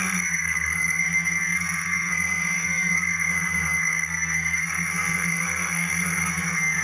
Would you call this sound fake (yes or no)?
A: yes